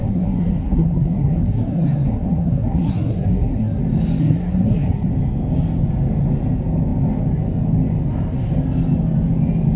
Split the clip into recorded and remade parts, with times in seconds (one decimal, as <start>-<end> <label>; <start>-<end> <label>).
0.0-3.8 remade; 3.8-4.2 recorded; 4.2-5.1 remade; 5.1-9.8 recorded